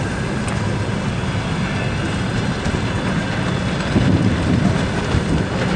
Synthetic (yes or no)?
no